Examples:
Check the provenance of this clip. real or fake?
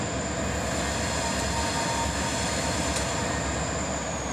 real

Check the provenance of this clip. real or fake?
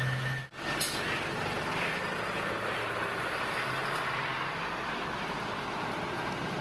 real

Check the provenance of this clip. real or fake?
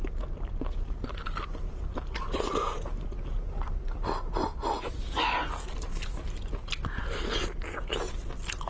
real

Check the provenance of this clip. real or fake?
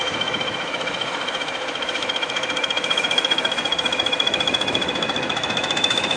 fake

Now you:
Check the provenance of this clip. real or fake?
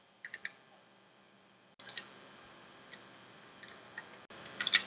real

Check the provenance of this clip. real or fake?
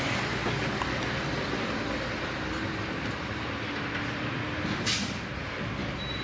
real